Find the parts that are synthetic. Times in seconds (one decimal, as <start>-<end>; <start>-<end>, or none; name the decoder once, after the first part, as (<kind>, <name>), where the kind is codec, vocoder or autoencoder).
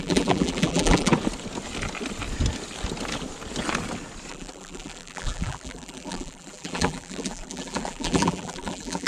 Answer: 0.0-1.1 (vocoder, BigVGAN v2); 4.3-9.1